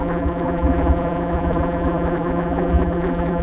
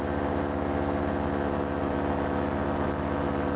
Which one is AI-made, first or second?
first